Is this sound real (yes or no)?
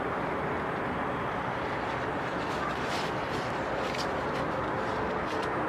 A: no